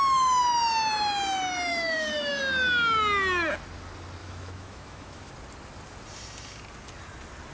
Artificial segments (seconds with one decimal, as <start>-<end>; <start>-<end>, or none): 1.7-2.4; 4.2-5.3